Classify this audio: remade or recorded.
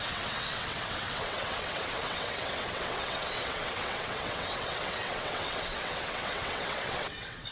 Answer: remade